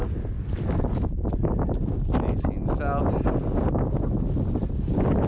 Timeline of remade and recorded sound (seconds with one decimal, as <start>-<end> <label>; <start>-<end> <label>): 0.0-5.3 recorded